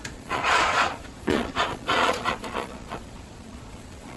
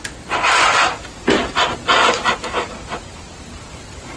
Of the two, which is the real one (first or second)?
second